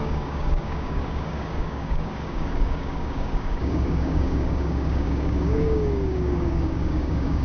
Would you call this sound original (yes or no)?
no